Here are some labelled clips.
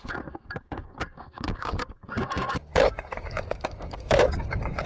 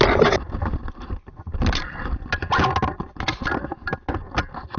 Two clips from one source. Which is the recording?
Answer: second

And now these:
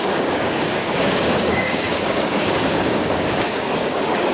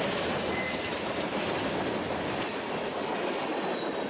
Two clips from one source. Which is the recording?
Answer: second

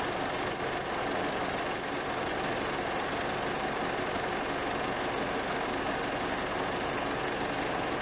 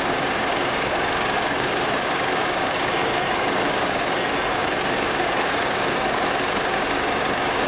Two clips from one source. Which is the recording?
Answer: first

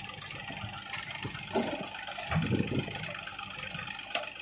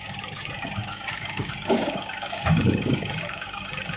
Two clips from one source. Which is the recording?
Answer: first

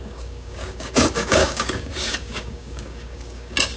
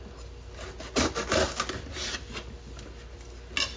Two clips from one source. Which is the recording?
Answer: second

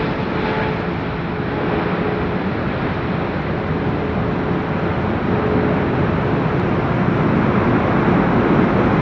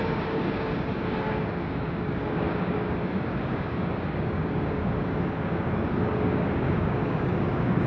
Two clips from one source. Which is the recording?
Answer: first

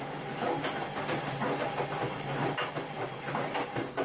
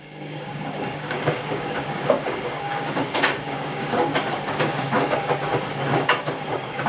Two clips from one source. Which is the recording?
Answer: first